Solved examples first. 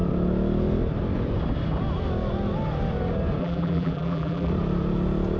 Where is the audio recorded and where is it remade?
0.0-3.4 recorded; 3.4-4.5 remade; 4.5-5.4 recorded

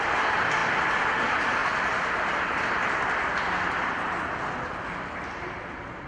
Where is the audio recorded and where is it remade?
0.0-6.1 recorded

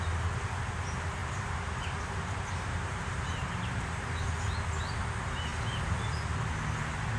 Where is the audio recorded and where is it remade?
0.0-1.2 recorded; 1.2-4.1 remade; 4.1-7.2 recorded

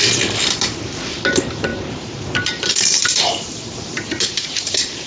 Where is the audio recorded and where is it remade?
0.0-1.7 recorded; 1.7-5.1 remade

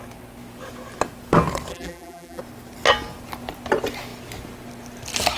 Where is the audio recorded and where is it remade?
0.0-1.7 recorded; 1.7-2.4 remade; 2.4-5.4 recorded

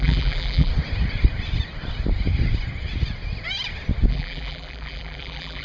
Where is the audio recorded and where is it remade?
0.0-0.7 remade; 0.7-4.1 recorded; 4.1-5.6 remade